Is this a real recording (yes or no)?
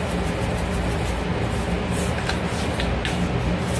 yes